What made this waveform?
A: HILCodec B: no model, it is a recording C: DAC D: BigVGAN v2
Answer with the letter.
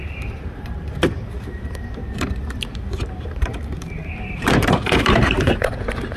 D